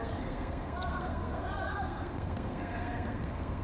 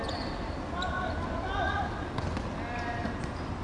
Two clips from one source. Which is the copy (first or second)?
first